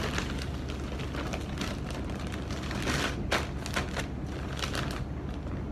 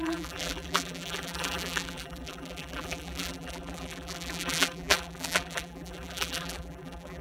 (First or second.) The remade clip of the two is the second